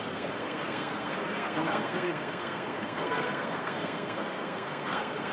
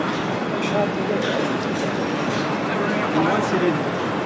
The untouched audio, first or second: second